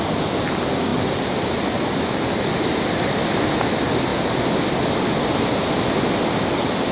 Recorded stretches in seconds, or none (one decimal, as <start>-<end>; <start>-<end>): 4.1-6.5